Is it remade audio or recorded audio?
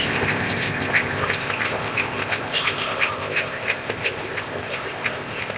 remade